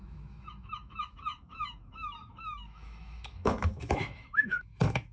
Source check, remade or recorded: remade